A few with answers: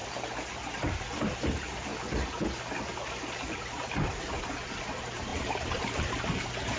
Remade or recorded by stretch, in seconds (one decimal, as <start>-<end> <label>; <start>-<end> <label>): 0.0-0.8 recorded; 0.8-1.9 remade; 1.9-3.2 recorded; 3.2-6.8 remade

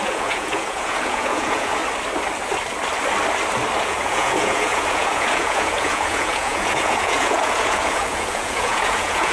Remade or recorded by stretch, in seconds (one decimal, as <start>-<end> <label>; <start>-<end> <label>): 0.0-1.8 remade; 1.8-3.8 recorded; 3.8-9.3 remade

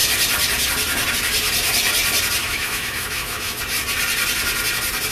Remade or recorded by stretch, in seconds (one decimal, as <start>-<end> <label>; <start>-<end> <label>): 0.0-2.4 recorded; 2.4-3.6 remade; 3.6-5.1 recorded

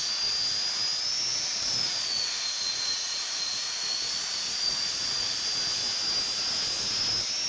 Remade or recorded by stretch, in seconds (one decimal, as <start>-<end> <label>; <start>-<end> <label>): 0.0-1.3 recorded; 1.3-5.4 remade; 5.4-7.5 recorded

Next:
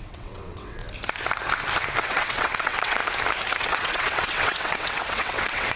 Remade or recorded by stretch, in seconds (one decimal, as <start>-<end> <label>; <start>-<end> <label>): 0.0-0.8 remade; 0.8-2.0 recorded; 2.0-3.0 remade; 3.0-3.6 recorded; 3.6-5.8 remade

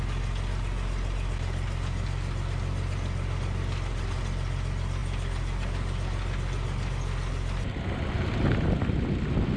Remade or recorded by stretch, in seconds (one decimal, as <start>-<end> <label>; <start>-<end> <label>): 0.0-9.6 recorded

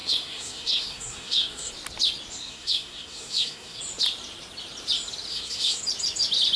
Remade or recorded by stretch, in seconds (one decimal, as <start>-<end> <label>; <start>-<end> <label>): 0.0-1.7 remade; 1.7-2.4 recorded; 2.4-3.8 remade; 3.8-5.3 recorded; 5.3-5.8 remade; 5.8-6.6 recorded

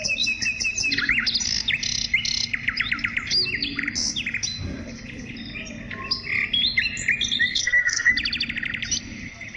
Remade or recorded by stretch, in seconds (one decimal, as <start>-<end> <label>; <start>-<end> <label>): 0.0-7.5 recorded; 7.5-8.1 remade; 8.1-9.6 recorded